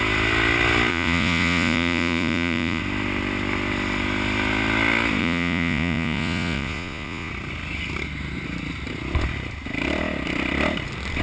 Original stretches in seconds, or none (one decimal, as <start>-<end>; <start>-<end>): 0.0-0.9; 2.8-5.2; 7.3-11.2